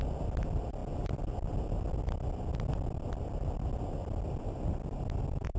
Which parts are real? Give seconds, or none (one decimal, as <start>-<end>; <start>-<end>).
0.0-5.6